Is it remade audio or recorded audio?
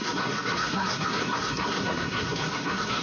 remade